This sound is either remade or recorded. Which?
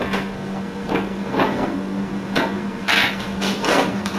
remade